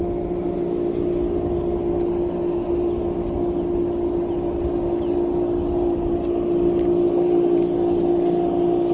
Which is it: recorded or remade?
recorded